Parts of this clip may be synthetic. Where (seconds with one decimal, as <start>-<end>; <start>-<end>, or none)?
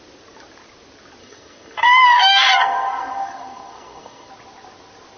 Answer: 1.2-4.3